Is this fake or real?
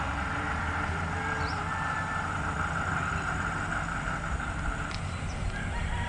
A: real